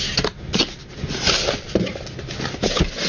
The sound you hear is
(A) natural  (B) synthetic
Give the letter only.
A